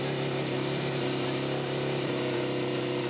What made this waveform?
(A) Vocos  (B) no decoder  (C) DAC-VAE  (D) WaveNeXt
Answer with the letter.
B